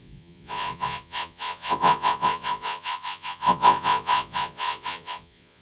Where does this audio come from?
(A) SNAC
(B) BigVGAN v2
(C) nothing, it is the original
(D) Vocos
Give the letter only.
D